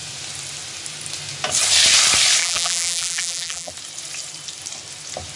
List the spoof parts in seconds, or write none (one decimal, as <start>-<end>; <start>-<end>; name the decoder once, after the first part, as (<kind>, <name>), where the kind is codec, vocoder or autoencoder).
2.4-3.7 (vocoder, BigVGAN v2)